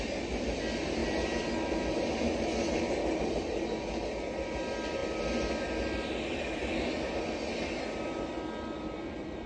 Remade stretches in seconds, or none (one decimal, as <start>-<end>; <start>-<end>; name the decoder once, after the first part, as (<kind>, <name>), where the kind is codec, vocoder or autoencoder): none